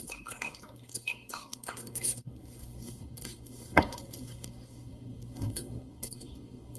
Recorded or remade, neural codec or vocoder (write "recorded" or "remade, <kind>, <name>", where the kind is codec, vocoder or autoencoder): remade, codec, SNAC